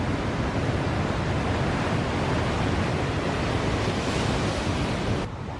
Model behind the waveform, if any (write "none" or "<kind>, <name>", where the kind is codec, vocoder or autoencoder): none